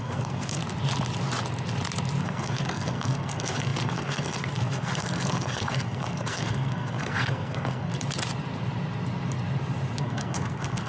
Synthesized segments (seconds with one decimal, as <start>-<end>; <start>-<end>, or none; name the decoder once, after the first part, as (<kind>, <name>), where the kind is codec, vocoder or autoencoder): 0.0-0.6 (codec, SNAC); 2.2-7.9; 10.0-10.9